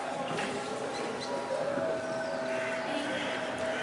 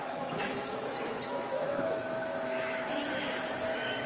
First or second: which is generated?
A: second